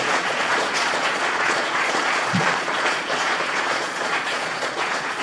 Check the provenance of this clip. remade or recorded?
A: remade